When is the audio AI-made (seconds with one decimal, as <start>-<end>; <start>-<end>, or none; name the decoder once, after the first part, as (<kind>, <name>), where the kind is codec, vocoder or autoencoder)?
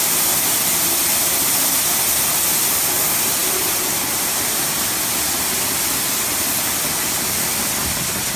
none